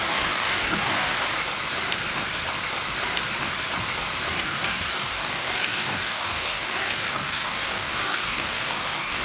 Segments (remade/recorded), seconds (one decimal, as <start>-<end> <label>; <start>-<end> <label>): 0.0-1.1 remade; 1.1-4.3 recorded; 4.3-9.2 remade